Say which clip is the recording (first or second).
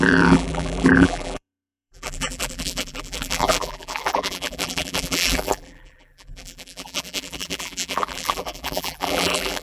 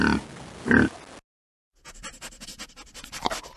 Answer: second